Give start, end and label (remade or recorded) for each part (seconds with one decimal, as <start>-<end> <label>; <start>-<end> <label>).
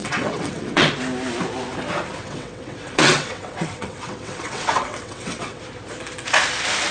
0.0-0.9 remade; 0.9-2.2 recorded; 2.2-5.6 remade; 5.6-6.9 recorded